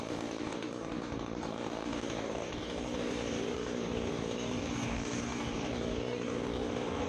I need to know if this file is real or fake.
fake